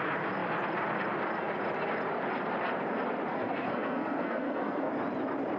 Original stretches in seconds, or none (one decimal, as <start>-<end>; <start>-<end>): 0.0-3.3; 4.9-5.6